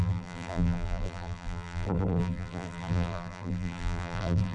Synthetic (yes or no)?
yes